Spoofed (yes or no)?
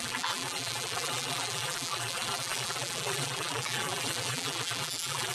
yes